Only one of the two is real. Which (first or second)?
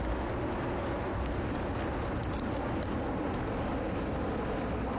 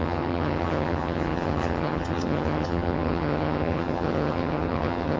first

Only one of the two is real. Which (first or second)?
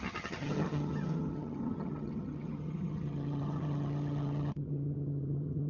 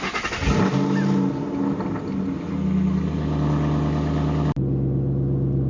second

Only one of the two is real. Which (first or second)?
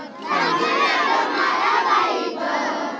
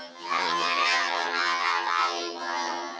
first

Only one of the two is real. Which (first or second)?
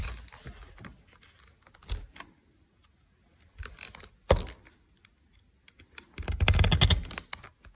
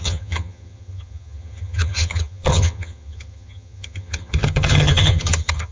first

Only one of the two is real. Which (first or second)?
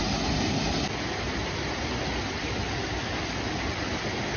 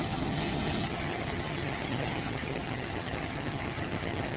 first